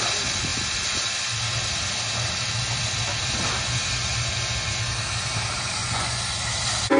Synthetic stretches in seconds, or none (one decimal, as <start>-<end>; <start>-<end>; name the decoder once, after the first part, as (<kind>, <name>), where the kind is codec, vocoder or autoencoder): 5.8-6.3 (vocoder, Vocos)